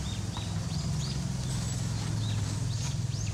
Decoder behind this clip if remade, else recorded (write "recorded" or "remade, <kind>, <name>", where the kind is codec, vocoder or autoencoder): recorded